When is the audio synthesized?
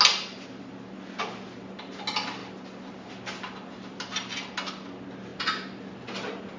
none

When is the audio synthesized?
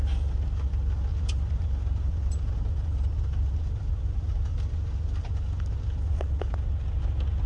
1.1-3.9 (vocoder, BigVGAN v2); 4.5-6.7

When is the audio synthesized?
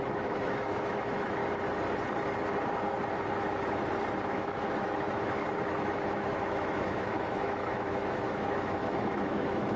0.0-1.4 (autoencoder, DAC-VAE); 4.3-9.8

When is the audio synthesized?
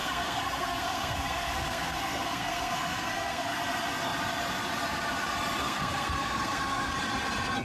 0.0-3.6 (codec, SNAC); 5.6-6.9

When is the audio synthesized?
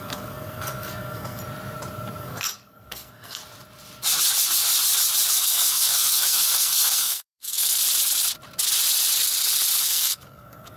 0.0-1.4 (codec, SNAC); 2.2-3.4; 5.3-7.8; 9.8-10.8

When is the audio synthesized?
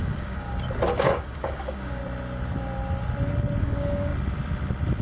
0.0-0.5 (codec, DAC); 1.0-2.0; 3.6-4.1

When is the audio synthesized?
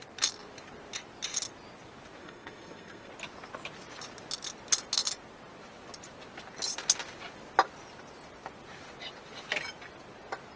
2.2-3.1 (codec, SNAC)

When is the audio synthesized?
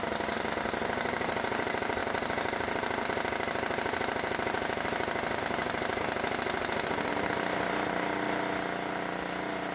none